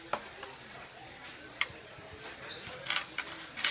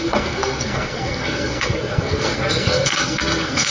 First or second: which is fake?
second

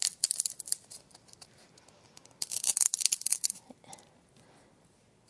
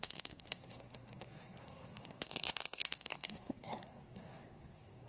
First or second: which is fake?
second